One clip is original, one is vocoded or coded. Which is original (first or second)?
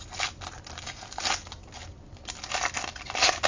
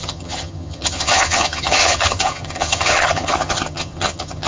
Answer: first